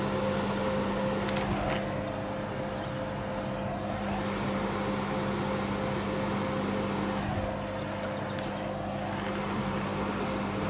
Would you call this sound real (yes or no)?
yes